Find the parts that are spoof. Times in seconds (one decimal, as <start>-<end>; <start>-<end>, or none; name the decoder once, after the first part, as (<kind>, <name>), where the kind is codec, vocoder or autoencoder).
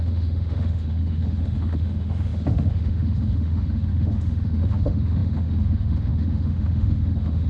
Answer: 0.0-7.5 (autoencoder, DAC-VAE)